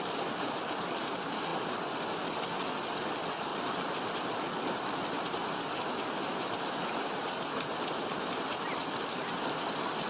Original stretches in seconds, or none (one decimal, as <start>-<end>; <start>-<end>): 0.0-3.5; 4.3-10.1